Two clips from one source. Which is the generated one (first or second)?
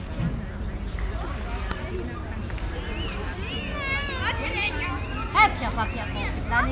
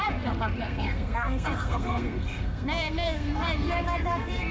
second